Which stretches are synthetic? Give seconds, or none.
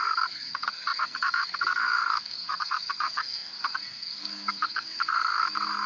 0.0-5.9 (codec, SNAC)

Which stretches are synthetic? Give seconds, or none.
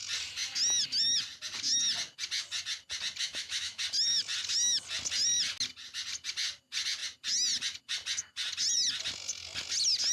3.2-3.8 (autoencoder, DAC-VAE)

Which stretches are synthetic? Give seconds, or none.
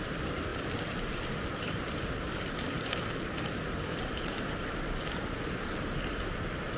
none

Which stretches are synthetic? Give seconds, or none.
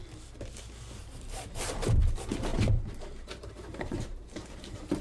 1.0-2.1 (vocoder, BigVGAN v2); 2.5-5.0